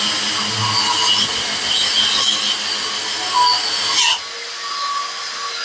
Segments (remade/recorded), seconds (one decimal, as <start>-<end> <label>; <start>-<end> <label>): 0.0-5.6 recorded